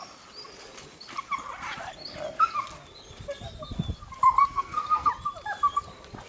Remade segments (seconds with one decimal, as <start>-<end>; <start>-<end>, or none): 4.4-5.1